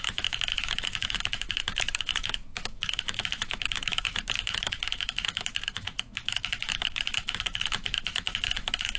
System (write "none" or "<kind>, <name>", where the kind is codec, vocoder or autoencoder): autoencoder, DAC-VAE